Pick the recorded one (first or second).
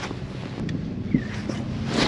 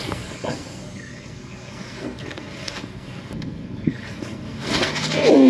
first